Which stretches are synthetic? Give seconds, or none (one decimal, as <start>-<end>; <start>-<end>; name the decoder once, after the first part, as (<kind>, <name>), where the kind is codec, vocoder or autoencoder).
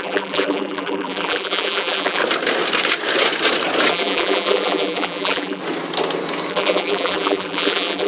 0.0-2.2 (vocoder, BigVGAN v2); 3.9-5.6; 6.5-8.1